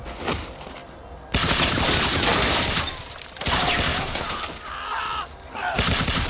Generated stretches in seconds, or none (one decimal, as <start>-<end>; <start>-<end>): 3.9-4.4